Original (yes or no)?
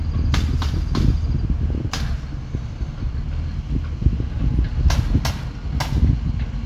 yes